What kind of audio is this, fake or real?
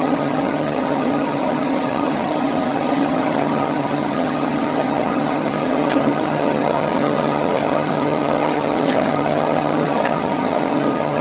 fake